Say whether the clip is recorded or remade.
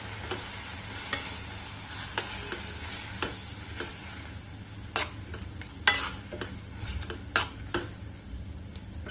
recorded